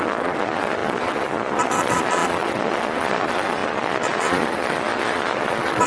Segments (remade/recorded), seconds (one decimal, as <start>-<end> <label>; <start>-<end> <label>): 0.0-5.9 remade